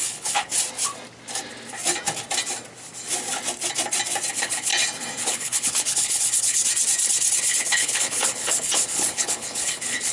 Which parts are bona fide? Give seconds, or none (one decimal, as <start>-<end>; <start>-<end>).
0.5-4.3; 4.7-5.2; 6.6-7.4